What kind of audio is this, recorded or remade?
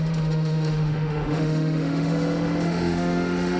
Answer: remade